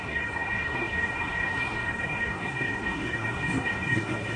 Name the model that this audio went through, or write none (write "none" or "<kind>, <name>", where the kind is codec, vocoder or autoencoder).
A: codec, SNAC